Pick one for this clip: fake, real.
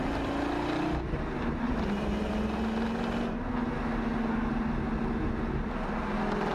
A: real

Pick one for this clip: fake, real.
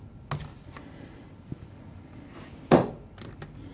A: real